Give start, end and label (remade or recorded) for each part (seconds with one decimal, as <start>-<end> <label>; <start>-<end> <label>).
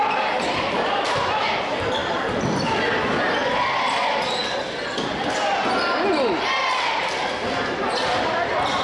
0.0-2.0 remade; 2.0-6.6 recorded; 6.6-8.8 remade